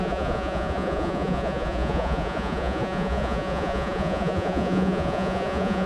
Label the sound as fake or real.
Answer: fake